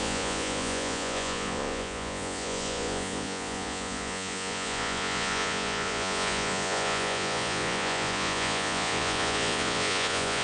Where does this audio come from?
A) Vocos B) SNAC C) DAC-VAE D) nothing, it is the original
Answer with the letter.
A